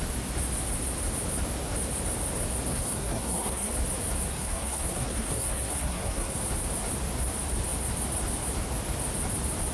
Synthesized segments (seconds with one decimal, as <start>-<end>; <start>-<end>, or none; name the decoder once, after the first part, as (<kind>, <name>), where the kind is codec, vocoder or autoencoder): 2.7-3.7 (codec, SNAC); 4.3-6.4